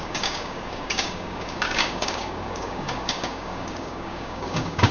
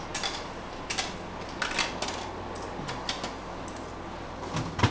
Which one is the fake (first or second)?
first